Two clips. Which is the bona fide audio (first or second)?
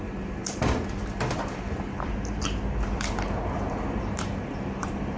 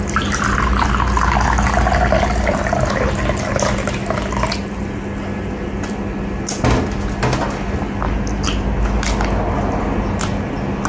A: second